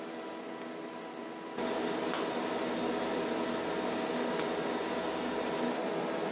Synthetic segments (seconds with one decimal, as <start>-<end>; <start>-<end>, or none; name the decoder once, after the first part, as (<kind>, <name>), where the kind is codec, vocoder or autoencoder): none